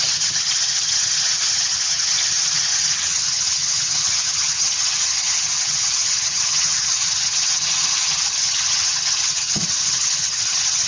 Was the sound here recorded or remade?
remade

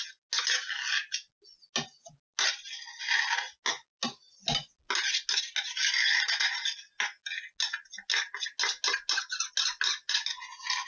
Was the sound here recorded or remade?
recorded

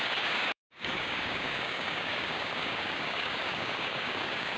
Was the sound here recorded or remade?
remade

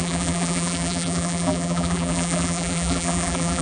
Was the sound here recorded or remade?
remade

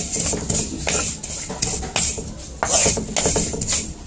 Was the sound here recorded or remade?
recorded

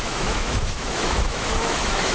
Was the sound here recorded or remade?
remade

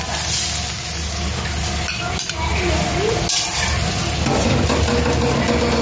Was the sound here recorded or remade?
recorded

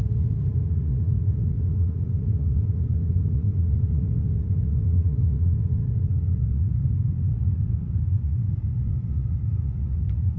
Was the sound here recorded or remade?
remade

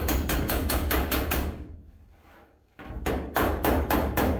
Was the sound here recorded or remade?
remade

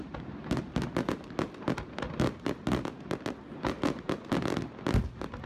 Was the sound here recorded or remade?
recorded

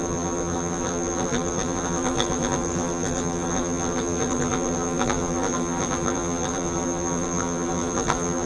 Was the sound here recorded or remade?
remade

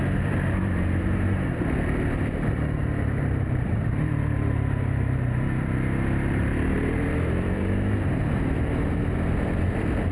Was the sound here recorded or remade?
remade